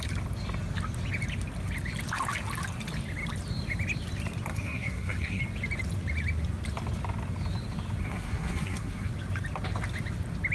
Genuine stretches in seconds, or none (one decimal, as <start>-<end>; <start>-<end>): 0.0-4.5; 5.4-8.0; 9.1-10.5